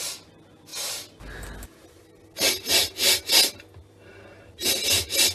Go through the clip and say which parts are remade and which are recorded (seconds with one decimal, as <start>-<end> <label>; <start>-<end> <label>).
0.0-4.1 recorded; 4.1-4.7 remade; 4.7-5.3 recorded